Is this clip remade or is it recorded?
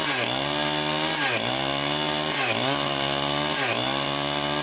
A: recorded